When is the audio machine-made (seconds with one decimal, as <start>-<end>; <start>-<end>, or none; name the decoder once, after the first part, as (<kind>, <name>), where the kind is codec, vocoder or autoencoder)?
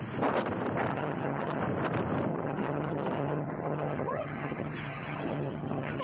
0.9-1.6 (vocoder, HiFi-GAN); 2.3-6.0